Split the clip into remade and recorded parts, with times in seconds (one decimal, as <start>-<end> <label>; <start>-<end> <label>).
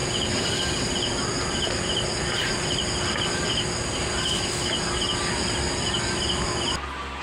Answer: 0.0-7.2 recorded